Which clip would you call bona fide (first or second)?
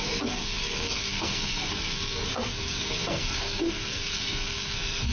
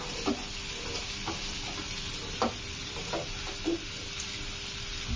second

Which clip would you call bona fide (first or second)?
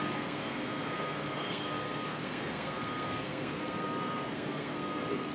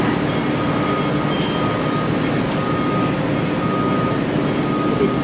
second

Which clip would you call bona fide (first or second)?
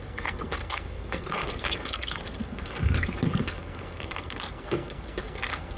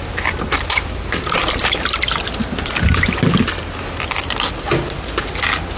second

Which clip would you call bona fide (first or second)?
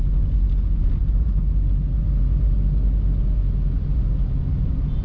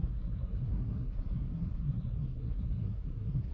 first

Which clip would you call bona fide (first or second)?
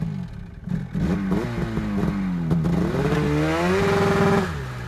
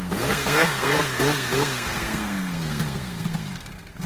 first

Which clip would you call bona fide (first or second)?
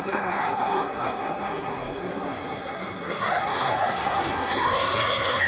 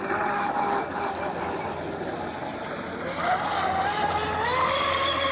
second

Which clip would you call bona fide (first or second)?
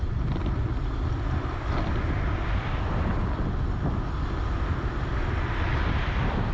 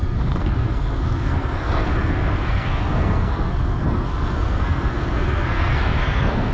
first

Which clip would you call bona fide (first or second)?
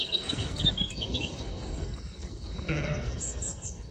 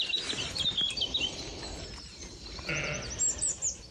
second